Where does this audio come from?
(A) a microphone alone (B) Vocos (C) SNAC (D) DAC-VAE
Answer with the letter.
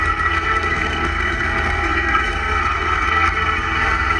C